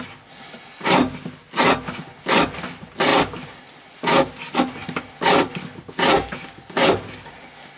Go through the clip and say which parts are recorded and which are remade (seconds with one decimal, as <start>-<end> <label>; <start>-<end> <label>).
0.0-7.8 recorded